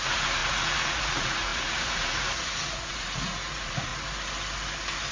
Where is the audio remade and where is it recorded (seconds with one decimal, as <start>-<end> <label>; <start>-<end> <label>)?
0.0-3.9 remade; 3.9-5.1 recorded